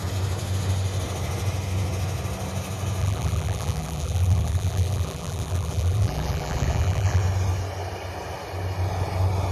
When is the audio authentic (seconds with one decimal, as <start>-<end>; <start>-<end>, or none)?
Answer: 0.0-3.0; 7.2-9.5